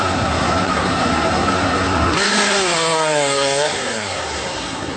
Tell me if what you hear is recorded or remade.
remade